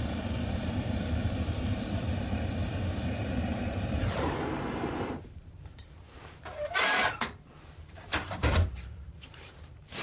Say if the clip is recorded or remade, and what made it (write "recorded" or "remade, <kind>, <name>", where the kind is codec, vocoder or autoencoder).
remade, vocoder, BigVGAN v2